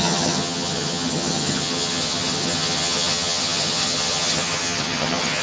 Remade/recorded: remade